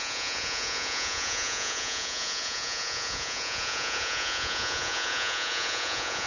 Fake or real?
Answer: fake